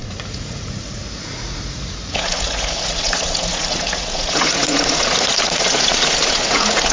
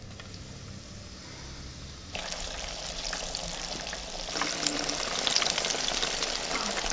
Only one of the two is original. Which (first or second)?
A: second